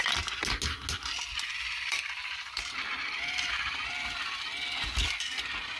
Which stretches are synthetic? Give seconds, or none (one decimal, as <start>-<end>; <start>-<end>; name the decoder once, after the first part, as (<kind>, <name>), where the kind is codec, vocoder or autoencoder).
1.5-3.9 (vocoder, BigVGAN v2)